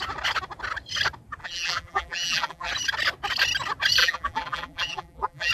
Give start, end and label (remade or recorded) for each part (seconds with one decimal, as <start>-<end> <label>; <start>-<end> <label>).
0.0-1.4 recorded; 1.4-2.7 remade; 2.7-4.0 recorded; 4.0-5.5 remade